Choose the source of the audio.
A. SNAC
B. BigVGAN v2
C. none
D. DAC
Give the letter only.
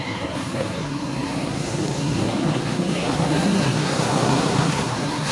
A